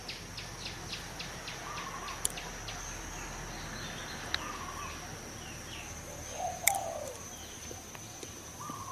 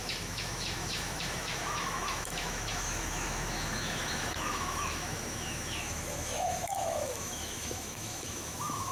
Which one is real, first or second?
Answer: first